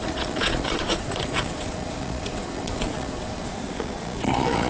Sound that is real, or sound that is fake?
fake